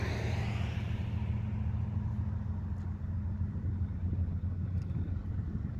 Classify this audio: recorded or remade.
recorded